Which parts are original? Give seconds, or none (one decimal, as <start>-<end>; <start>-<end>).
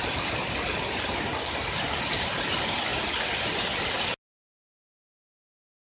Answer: 0.0-5.9